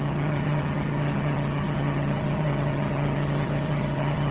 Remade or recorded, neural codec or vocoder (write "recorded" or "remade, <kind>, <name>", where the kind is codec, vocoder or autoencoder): remade, vocoder, HiFi-GAN